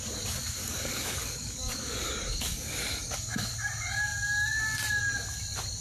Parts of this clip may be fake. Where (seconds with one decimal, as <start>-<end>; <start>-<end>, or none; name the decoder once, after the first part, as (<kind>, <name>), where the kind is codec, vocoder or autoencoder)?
0.6-3.5 (codec, DAC)